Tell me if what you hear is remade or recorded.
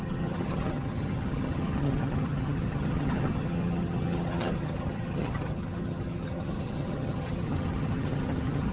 remade